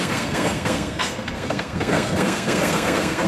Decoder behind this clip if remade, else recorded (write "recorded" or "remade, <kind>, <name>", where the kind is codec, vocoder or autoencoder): remade, codec, SNAC